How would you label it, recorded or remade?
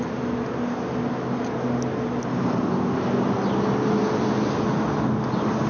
recorded